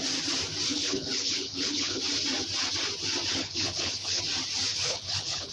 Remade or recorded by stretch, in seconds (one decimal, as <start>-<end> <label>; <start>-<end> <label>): 0.0-0.7 recorded; 0.7-2.0 remade; 2.0-3.3 recorded; 3.3-4.2 remade; 4.2-4.7 recorded; 4.7-5.5 remade